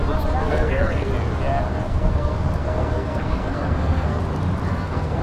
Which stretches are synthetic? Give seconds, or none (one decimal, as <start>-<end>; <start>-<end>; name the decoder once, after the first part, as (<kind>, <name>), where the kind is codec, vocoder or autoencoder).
0.4-1.1 (codec, SNAC); 1.7-4.2; 4.7-5.2